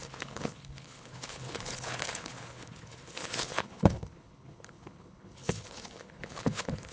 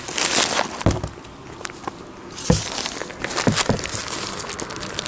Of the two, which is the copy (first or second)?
first